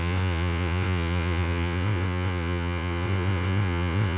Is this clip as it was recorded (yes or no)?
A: no